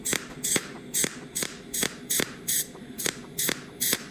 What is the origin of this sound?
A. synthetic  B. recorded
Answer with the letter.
A